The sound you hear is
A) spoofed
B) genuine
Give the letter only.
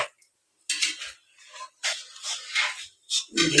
B